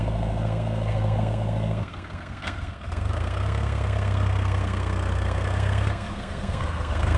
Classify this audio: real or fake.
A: fake